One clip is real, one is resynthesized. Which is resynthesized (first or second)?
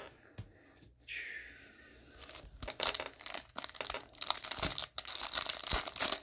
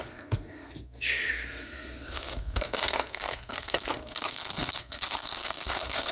second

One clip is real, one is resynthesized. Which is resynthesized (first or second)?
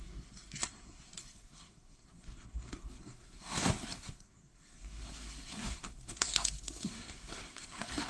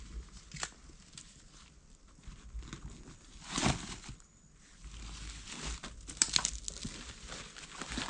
first